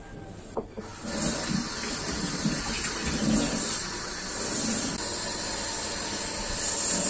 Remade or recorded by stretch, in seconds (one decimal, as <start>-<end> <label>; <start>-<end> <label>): 0.0-7.1 recorded